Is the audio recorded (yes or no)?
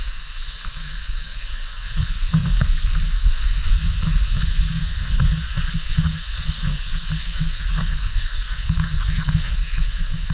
no